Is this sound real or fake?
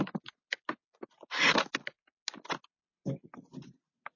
real